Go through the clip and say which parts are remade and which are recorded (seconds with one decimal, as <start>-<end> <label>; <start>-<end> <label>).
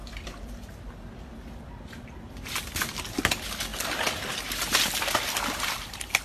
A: 0.0-1.6 remade; 1.6-6.2 recorded